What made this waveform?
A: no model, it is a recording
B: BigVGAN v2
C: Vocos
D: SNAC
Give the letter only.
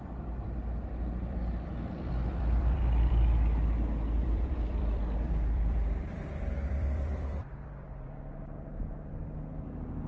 B